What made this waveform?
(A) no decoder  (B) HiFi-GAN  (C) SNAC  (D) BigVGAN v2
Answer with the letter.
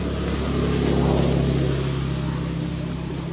A